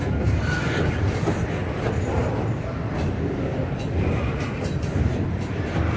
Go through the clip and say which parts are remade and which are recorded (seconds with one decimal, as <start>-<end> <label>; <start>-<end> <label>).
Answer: 0.0-6.0 recorded